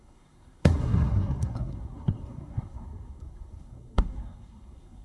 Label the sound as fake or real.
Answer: fake